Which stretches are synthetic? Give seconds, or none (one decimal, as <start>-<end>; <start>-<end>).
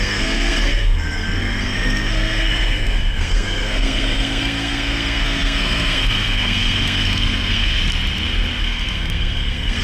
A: 0.0-7.8; 8.6-9.8